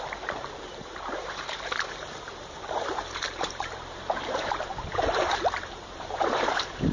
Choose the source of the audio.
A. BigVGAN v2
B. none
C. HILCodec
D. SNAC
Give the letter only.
A